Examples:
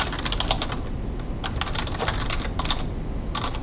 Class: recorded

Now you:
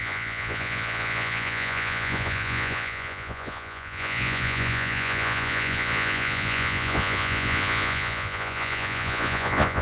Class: remade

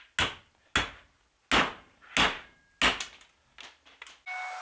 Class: recorded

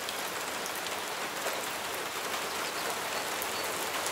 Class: recorded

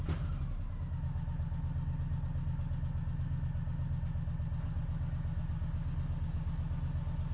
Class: recorded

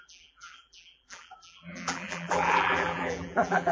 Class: remade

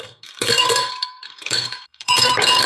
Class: remade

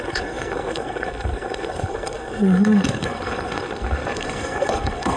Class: remade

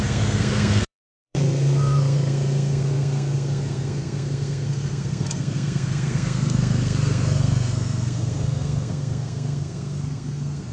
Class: remade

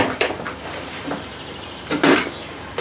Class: remade